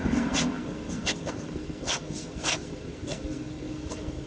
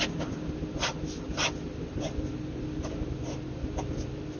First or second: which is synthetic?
first